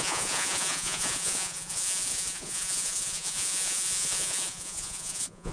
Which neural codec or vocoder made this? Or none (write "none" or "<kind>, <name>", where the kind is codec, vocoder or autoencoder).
vocoder, Vocos